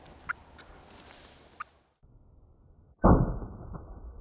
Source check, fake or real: real